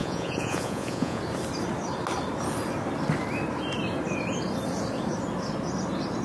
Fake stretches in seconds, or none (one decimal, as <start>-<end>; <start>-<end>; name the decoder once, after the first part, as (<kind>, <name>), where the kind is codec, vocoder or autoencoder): 0.0-1.2 (vocoder, Vocos)